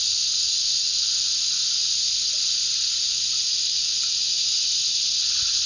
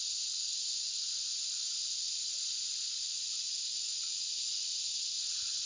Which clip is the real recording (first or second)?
first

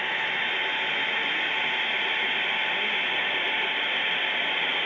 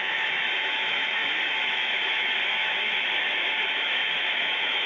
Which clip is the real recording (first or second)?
first